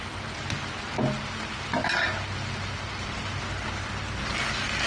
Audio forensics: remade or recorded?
recorded